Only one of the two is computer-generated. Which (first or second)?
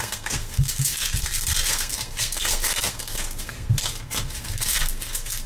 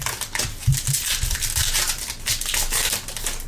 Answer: first